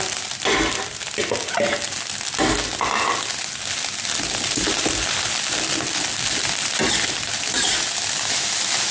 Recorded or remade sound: recorded